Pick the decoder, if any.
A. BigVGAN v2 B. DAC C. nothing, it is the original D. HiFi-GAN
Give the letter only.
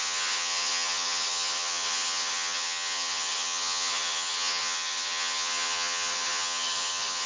D